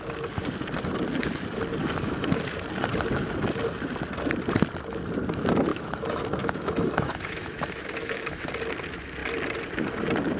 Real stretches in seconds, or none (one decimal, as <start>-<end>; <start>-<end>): 0.0-1.8; 2.4-5.7; 8.5-10.4